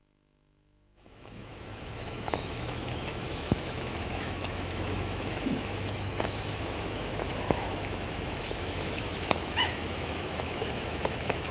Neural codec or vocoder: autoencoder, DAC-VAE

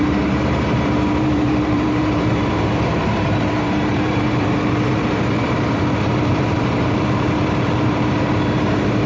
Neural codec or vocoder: vocoder, BigVGAN v2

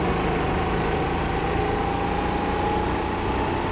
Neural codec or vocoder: none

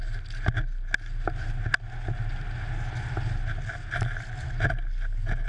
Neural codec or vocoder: none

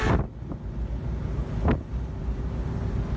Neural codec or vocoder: none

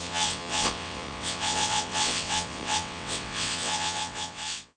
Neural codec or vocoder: vocoder, WaveNeXt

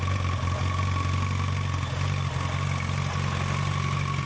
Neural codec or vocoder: none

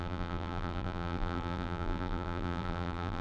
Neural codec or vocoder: vocoder, BigVGAN v2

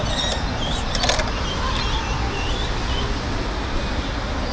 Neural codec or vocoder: none